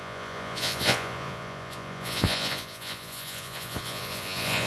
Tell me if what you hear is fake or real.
fake